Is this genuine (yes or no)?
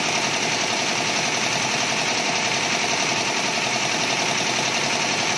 yes